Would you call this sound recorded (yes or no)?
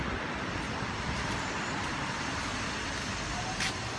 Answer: yes